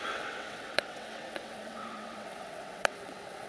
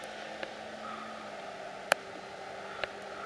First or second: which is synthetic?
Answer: first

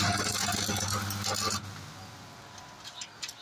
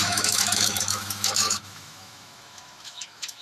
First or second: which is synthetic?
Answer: second